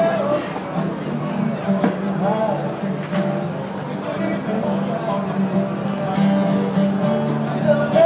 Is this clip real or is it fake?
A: real